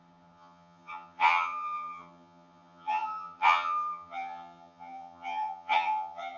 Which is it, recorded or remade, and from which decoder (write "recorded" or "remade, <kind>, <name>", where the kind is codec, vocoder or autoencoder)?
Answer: remade, vocoder, HiFi-GAN